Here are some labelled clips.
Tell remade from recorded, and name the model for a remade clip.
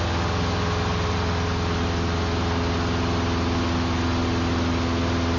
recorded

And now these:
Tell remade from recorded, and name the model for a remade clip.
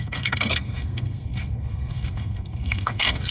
remade, codec, SNAC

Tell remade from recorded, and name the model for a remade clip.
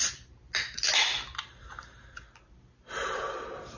recorded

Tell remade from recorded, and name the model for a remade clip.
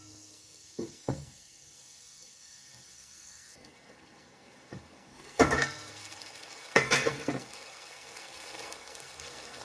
remade, codec, SNAC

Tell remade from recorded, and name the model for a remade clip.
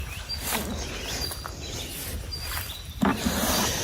recorded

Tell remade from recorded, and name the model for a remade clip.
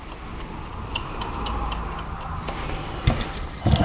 recorded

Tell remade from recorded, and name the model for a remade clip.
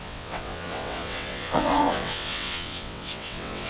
remade, vocoder, WaveNeXt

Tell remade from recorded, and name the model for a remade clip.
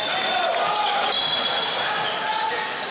recorded